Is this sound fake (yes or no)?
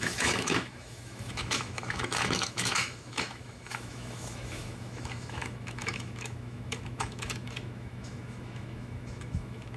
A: yes